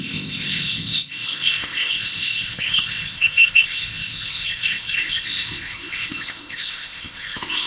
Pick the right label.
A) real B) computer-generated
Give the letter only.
B